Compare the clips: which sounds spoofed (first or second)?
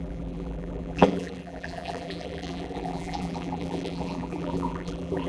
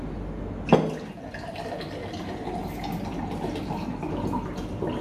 first